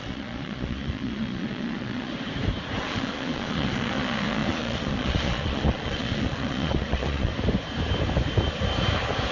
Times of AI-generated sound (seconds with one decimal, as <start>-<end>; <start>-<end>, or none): 0.0-2.1; 2.8-7.3